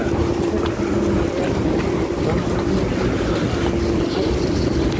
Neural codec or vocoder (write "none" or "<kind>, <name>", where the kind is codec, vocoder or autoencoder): none